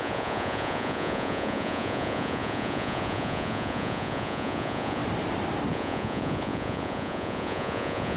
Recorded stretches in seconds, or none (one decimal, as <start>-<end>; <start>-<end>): 5.0-5.7